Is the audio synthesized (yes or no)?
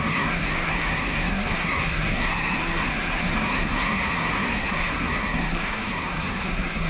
yes